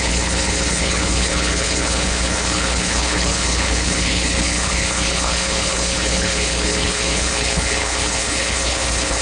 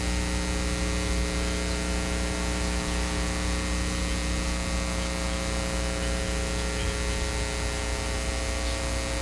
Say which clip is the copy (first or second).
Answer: first